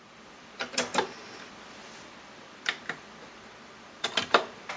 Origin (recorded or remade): remade